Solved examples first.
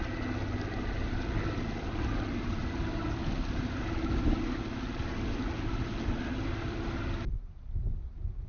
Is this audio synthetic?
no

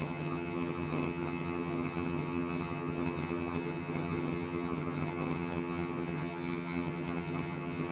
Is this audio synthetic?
yes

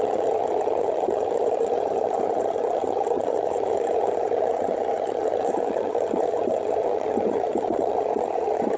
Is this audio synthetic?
yes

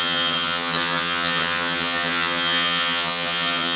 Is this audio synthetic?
yes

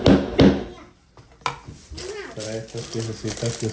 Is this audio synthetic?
no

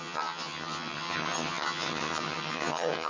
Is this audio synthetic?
yes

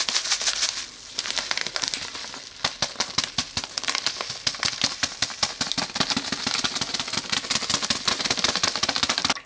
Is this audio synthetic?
no